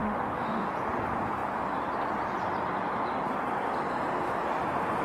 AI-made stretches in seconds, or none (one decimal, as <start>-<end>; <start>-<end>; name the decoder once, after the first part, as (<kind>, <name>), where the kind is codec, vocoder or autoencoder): 0.0-0.7 (autoencoder, DAC-VAE)

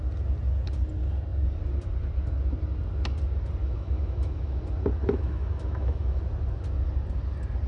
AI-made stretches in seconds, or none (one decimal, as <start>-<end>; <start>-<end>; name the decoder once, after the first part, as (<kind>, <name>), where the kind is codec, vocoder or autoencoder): 3.6-4.6 (autoencoder, DAC-VAE); 5.0-6.2

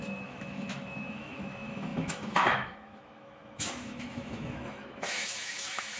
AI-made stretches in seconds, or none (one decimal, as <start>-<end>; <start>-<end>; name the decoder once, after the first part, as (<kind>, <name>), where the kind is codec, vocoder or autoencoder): 0.0-6.0 (autoencoder, DAC-VAE)

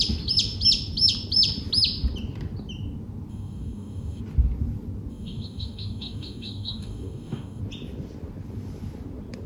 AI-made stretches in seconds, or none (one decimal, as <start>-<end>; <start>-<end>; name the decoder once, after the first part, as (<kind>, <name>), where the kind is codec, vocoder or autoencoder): 3.3-4.2 (codec, DAC); 5.1-7.6

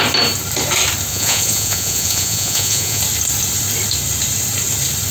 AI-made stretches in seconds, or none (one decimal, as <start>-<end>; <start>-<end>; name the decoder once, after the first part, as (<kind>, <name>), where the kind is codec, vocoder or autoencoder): 1.1-3.0 (vocoder, Vocos)

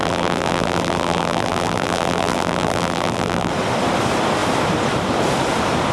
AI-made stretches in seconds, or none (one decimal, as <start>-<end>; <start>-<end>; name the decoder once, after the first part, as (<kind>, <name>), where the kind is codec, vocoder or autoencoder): 0.0-3.5 (vocoder, BigVGAN v2)

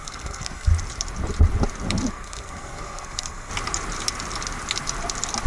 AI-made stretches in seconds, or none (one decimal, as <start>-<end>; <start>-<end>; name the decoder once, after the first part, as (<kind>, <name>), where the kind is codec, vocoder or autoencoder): 0.0-0.7 (codec, SNAC); 2.1-3.5